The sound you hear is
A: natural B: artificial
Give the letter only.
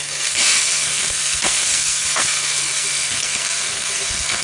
B